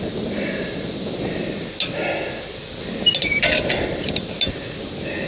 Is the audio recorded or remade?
recorded